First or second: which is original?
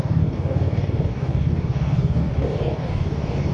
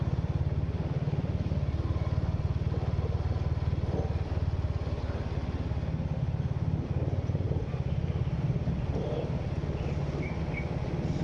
second